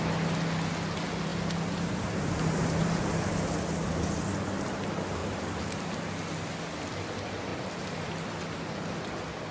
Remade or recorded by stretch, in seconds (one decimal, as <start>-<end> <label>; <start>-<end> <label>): 0.0-1.3 recorded; 1.3-3.1 remade; 3.1-7.5 recorded; 7.5-8.1 remade; 8.1-9.5 recorded